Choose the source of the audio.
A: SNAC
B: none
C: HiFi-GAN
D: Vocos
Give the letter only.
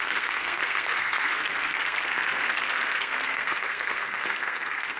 A